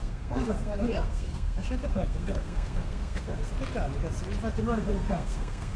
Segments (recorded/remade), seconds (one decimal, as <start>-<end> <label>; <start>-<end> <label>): 0.0-3.5 remade; 3.5-4.5 recorded; 4.5-5.8 remade

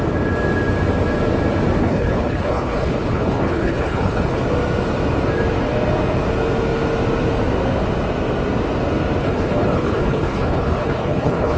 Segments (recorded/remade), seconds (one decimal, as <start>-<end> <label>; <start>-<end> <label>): 0.0-1.8 recorded; 1.8-4.4 remade; 4.4-9.2 recorded; 9.2-11.6 remade

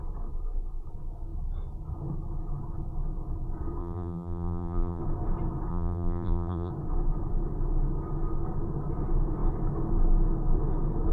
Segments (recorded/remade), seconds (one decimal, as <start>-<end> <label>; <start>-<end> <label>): 0.0-3.8 recorded; 3.8-5.0 remade; 5.0-5.7 recorded; 5.7-6.7 remade; 6.7-11.1 recorded

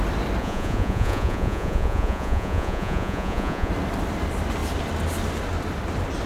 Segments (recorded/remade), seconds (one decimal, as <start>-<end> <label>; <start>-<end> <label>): 0.0-0.4 recorded; 0.4-3.7 remade; 3.7-6.3 recorded

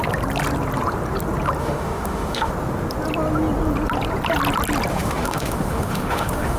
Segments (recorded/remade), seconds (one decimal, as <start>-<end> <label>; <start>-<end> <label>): 0.0-1.6 recorded; 1.6-2.5 remade; 2.5-4.9 recorded; 4.9-6.6 remade